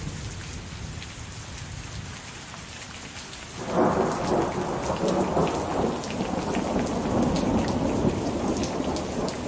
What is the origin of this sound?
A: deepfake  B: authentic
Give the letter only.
B